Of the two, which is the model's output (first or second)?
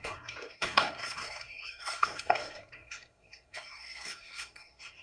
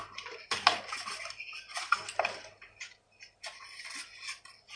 first